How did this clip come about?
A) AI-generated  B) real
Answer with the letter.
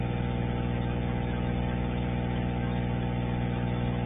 B